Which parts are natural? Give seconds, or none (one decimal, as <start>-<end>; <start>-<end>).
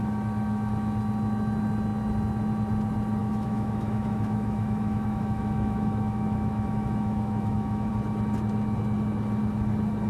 0.0-3.2; 7.9-10.1